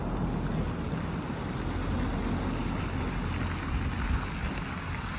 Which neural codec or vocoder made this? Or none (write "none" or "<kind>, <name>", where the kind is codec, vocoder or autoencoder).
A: none